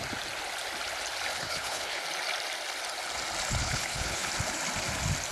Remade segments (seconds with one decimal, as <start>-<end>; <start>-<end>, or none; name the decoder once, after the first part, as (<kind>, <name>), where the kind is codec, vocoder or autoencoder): 1.3-2.0 (codec, HILCodec); 3.6-4.3